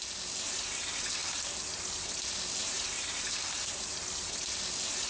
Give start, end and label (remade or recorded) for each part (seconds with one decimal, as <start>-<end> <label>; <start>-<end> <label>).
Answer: 0.0-2.6 recorded; 2.6-4.0 remade; 4.0-5.1 recorded